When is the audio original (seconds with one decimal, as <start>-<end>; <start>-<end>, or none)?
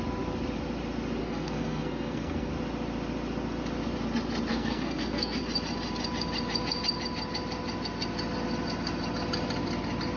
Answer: 0.0-1.2; 2.5-4.5; 5.4-10.2